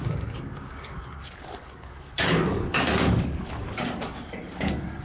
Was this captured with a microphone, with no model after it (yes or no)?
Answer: no